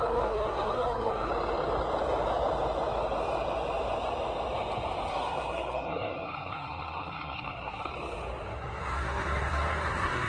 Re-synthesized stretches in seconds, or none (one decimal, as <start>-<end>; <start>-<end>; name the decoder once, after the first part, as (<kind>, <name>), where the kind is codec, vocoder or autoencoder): 0.0-1.3 (codec, SNAC); 5.1-7.9; 8.5-10.3